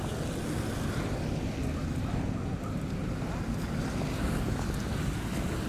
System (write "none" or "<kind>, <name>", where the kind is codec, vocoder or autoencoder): none